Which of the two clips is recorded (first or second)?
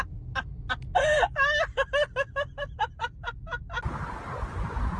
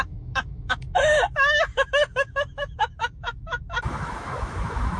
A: first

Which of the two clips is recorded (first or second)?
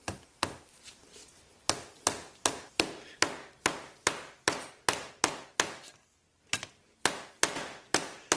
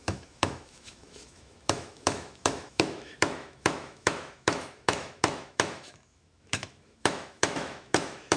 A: first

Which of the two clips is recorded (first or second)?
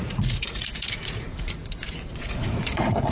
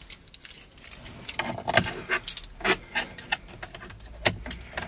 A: second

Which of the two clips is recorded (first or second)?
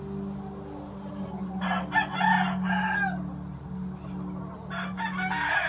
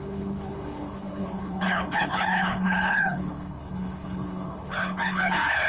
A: first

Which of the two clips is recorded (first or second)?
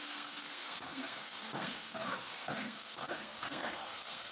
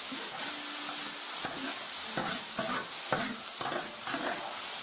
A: second